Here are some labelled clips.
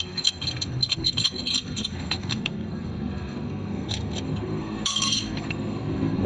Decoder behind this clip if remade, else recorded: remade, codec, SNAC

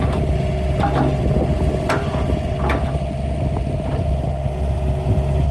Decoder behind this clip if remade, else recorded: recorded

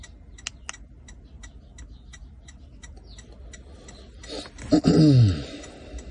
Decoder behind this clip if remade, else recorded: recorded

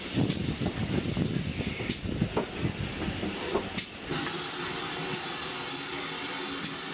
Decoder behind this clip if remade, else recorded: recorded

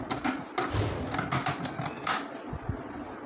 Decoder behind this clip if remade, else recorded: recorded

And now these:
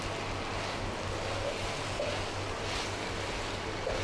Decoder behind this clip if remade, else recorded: recorded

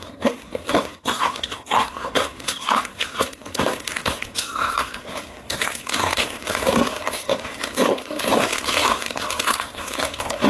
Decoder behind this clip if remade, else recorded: remade, codec, SNAC